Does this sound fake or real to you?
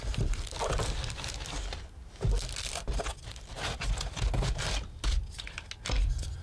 real